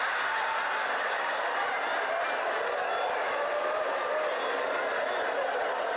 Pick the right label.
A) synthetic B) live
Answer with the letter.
B